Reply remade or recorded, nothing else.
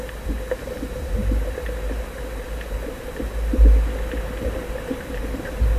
recorded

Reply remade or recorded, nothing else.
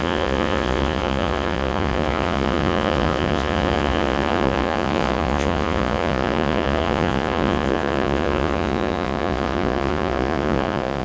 remade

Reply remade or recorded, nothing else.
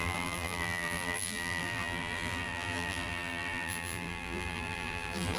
remade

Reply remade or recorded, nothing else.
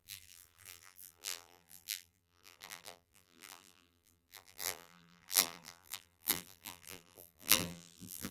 remade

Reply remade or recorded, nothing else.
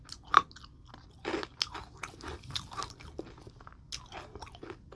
recorded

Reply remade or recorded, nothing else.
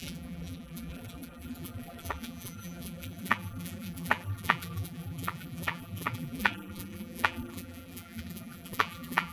remade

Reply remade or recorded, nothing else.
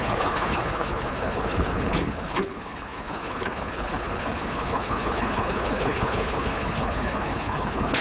remade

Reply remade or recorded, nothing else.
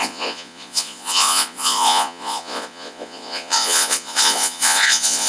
remade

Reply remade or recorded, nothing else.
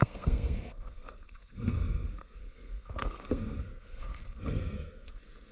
remade